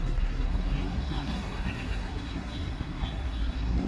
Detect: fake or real fake